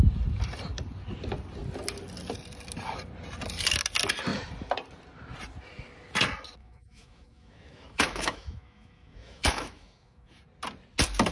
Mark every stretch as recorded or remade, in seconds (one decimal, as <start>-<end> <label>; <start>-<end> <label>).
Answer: 0.0-6.6 recorded; 6.6-10.4 remade; 10.4-11.3 recorded